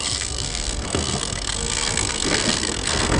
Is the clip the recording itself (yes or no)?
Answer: no